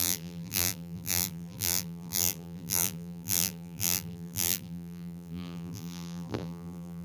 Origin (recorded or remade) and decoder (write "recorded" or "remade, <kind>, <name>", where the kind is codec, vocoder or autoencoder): remade, vocoder, BigVGAN v2